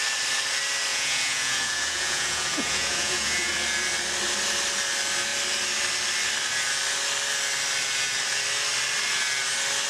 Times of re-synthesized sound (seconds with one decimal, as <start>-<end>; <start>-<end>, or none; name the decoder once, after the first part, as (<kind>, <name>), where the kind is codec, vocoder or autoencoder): 0.9-3.5 (vocoder, Vocos)